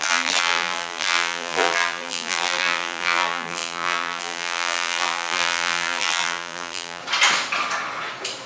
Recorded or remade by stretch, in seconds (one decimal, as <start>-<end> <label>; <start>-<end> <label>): 0.0-7.0 remade; 7.0-8.5 recorded